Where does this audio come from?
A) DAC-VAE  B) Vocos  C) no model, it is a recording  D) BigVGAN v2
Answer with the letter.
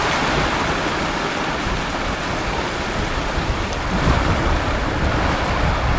C